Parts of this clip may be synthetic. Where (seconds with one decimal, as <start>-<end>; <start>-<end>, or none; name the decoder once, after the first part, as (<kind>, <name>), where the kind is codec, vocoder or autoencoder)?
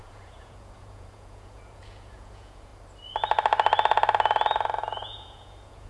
0.0-2.7 (vocoder, Vocos); 4.8-5.9